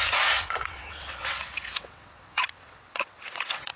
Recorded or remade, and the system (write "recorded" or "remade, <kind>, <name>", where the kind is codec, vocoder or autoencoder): remade, vocoder, WaveNeXt